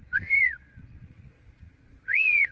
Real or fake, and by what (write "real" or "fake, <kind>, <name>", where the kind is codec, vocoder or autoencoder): fake, vocoder, Vocos